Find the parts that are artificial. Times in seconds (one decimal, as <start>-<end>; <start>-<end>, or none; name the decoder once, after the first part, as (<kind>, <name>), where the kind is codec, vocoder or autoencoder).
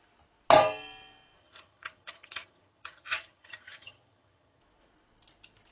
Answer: 1.4-4.6 (vocoder, HiFi-GAN)